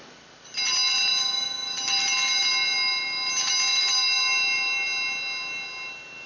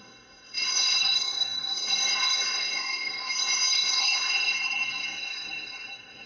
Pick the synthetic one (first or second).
second